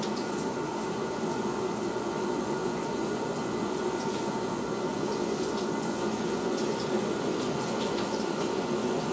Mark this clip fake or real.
fake